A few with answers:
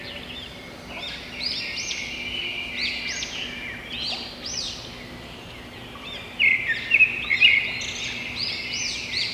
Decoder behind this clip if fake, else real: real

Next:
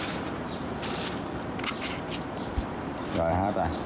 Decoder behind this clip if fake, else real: fake, vocoder, BigVGAN v2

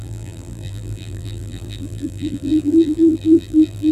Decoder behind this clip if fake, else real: fake, vocoder, BigVGAN v2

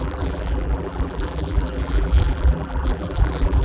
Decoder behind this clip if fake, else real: fake, vocoder, BigVGAN v2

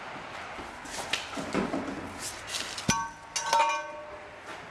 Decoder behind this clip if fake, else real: real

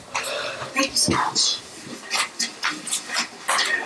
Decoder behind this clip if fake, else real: real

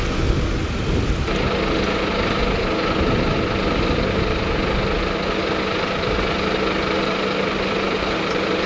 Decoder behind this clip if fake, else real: real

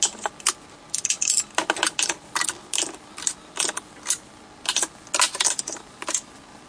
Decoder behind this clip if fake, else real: real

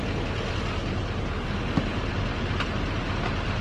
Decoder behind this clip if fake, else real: real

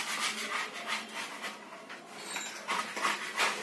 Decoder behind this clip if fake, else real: real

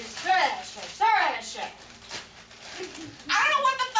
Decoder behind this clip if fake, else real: fake, vocoder, BigVGAN v2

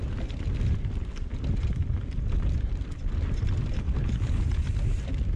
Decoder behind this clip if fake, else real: real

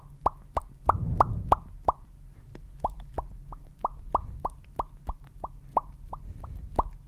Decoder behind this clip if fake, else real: real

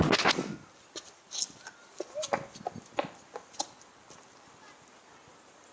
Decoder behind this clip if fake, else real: real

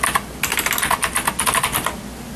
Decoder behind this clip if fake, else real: real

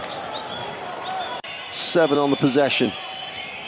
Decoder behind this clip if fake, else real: fake, vocoder, BigVGAN v2